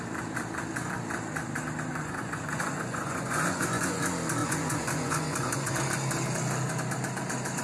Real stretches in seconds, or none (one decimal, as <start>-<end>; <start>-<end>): 0.0-1.9; 4.0-4.4; 5.7-7.6